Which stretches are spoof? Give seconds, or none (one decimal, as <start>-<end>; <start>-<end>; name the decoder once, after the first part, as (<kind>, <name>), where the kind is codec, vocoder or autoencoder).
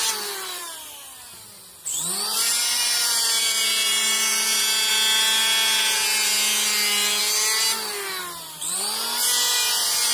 0.0-0.7 (vocoder, BigVGAN v2); 2.3-4.9